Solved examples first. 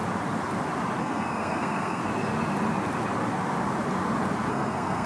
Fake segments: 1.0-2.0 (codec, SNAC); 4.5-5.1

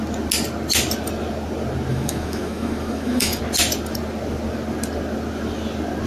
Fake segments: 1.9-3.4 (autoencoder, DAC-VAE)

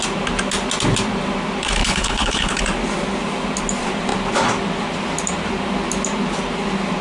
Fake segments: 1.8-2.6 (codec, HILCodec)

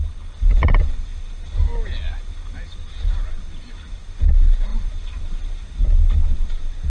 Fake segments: 4.7-5.8 (vocoder, BigVGAN v2)

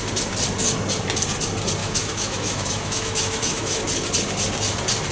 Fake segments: 1.8-3.8 (autoencoder, DAC-VAE)

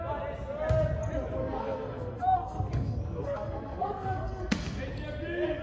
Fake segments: 1.4-4.8 (codec, SNAC)